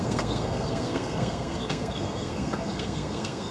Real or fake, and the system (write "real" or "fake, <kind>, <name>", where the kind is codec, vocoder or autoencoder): fake, codec, SNAC